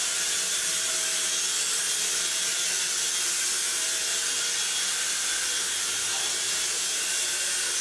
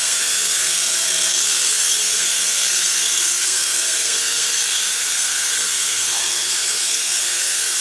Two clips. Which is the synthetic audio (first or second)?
second